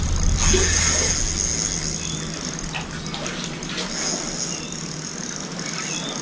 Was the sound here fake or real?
real